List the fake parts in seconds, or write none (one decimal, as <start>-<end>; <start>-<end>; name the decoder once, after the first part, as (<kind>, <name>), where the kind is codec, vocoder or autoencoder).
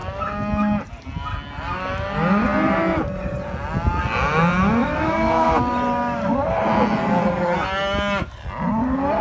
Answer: 4.8-5.6 (autoencoder, DAC-VAE)